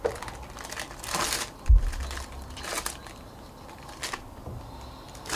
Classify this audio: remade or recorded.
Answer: recorded